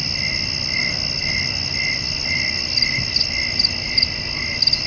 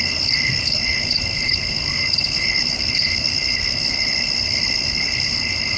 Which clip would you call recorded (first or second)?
first